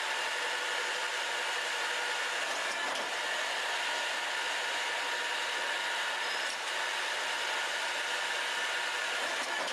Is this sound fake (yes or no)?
no